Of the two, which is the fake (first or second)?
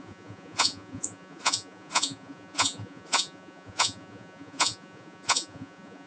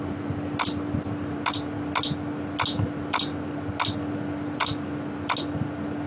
first